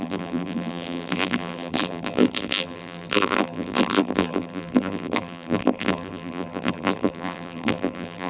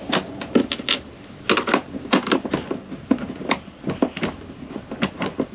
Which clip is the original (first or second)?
second